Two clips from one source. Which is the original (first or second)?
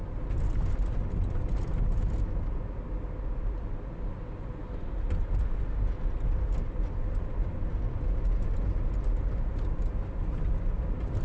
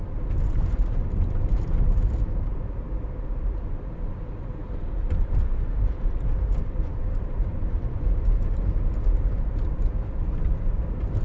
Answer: first